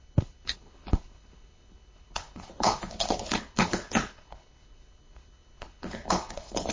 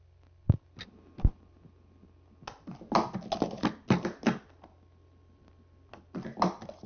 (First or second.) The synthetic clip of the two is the first